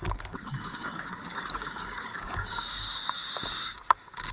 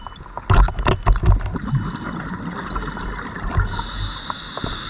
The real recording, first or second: second